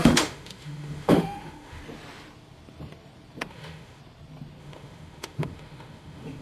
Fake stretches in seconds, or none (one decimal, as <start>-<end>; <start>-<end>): 0.0-1.8; 3.5-4.0; 4.6-6.4